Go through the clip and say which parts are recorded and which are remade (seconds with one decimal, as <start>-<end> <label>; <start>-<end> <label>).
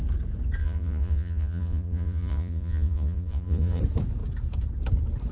0.0-0.6 recorded; 0.6-3.8 remade; 3.8-5.3 recorded